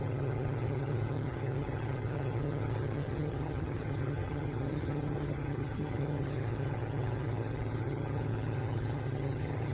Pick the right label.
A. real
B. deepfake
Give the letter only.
B